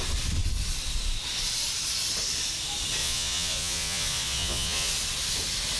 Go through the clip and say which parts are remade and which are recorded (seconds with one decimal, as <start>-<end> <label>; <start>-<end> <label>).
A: 0.0-3.0 recorded; 3.0-4.9 remade; 4.9-5.8 recorded